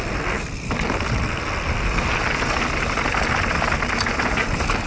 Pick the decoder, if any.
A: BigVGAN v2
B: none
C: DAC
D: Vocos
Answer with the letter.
B